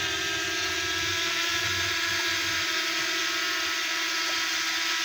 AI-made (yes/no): yes